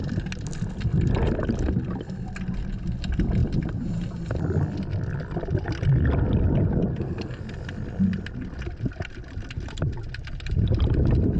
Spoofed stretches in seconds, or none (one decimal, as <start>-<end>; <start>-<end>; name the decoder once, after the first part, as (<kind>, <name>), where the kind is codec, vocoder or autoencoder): 6.9-7.4 (codec, SNAC)